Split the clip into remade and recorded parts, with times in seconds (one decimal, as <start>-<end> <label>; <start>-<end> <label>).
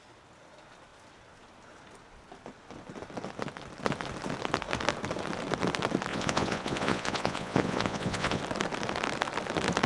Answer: 0.0-6.1 recorded; 6.1-8.4 remade; 8.4-9.9 recorded